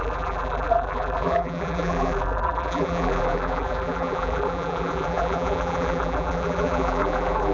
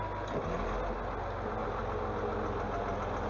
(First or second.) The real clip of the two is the second